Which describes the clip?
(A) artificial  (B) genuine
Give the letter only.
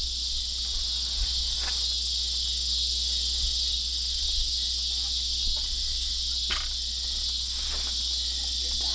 B